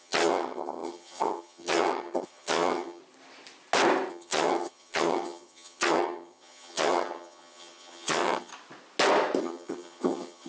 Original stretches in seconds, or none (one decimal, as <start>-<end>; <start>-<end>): 3.0-4.1; 8.5-9.4